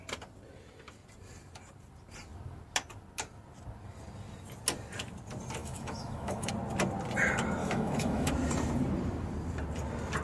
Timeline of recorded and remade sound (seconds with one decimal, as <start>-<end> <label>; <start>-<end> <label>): 0.0-5.6 recorded; 5.6-6.5 remade; 6.5-7.6 recorded; 7.6-8.3 remade; 8.3-10.2 recorded